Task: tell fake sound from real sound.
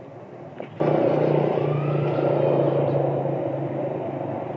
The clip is real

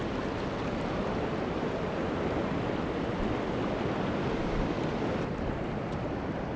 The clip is real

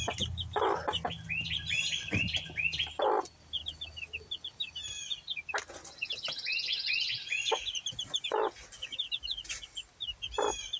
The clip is real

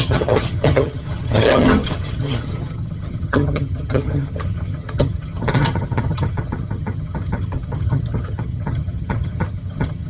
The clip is fake